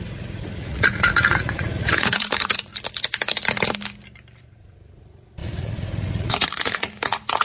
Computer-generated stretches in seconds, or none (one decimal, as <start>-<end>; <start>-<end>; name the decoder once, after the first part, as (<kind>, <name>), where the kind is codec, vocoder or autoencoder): 0.0-2.7 (vocoder, Vocos); 4.4-7.4